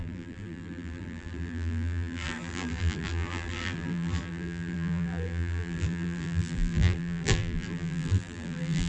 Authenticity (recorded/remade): remade